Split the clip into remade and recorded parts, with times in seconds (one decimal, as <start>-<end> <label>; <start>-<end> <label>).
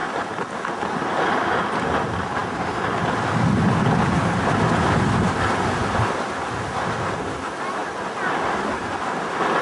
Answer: 0.0-9.6 recorded